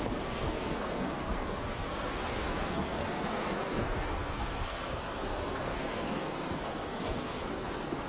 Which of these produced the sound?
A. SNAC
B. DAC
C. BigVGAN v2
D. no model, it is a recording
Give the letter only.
A